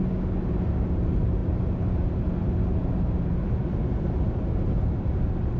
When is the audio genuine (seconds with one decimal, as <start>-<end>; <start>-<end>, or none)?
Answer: 0.0-5.6